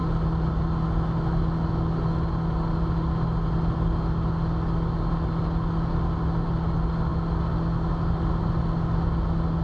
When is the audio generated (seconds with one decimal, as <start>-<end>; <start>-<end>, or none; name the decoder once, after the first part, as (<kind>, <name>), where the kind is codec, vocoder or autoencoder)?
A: none